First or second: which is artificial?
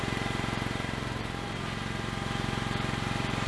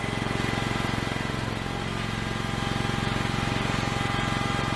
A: first